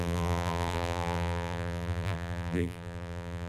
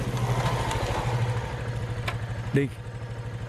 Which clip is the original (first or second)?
second